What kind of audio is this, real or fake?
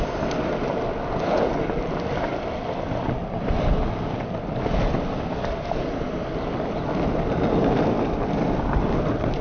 real